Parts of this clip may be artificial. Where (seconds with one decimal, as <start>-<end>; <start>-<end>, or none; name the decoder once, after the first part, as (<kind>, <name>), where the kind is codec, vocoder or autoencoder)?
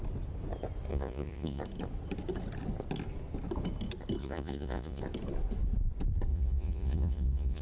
0.9-1.6 (vocoder, Vocos); 4.2-5.0; 6.3-7.6